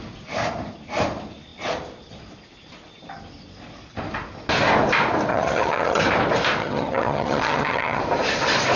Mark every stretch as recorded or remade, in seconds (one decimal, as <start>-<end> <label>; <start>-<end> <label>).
0.0-5.3 recorded; 5.3-6.0 remade; 6.0-6.6 recorded; 6.6-8.0 remade; 8.0-8.8 recorded